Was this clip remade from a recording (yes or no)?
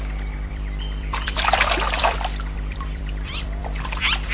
yes